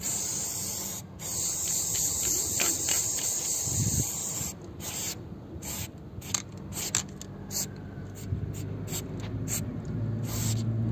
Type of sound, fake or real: real